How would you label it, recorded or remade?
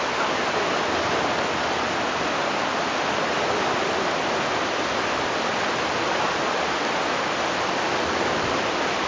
recorded